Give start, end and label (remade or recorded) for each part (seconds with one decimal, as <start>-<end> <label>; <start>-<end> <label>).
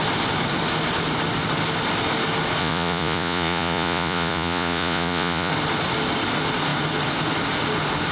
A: 0.0-2.6 recorded; 2.6-5.5 remade; 5.5-8.1 recorded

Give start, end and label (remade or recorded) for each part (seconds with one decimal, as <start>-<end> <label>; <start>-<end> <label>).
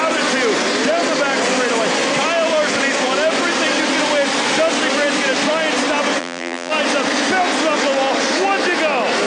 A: 0.0-6.2 recorded; 6.2-6.7 remade; 6.7-9.3 recorded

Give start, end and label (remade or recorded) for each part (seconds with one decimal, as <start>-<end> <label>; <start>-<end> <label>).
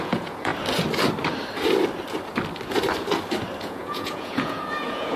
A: 0.0-0.5 remade; 0.5-3.6 recorded; 3.6-5.2 remade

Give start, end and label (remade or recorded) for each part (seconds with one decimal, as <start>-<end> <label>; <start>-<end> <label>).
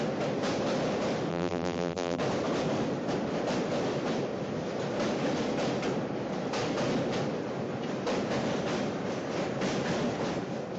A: 0.0-1.3 recorded; 1.3-2.2 remade; 2.2-10.8 recorded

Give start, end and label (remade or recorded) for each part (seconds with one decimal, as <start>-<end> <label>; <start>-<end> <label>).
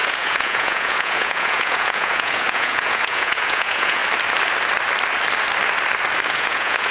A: 0.0-4.0 remade; 4.0-6.3 recorded; 6.3-6.9 remade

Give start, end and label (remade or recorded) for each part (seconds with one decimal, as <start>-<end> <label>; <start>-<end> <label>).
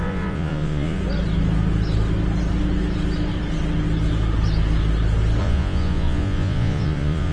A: 0.0-1.0 remade; 1.0-5.4 recorded; 5.4-7.3 remade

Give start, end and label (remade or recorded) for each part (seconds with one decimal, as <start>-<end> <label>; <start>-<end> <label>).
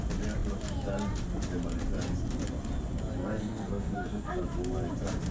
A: 0.0-3.2 recorded; 3.2-4.3 remade; 4.3-5.3 recorded